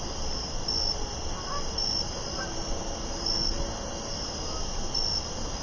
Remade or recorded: recorded